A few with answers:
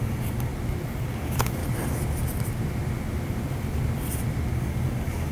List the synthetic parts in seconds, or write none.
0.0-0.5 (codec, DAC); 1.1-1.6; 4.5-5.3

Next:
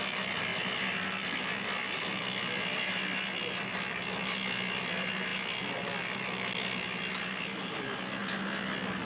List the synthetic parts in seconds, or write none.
none

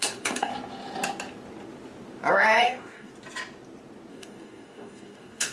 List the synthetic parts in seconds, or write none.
0.0-0.5 (codec, DAC); 2.3-3.1; 4.1-5.5

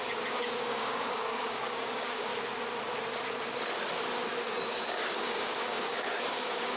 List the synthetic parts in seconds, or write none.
0.0-2.3 (codec, DAC); 4.4-6.8

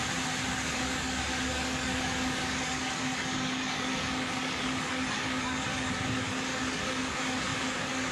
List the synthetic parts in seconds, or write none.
0.5-8.1 (codec, DAC)

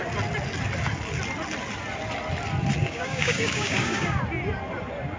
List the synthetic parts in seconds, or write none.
2.8-4.2 (codec, DAC)